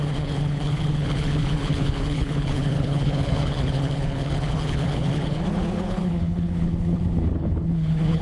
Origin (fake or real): fake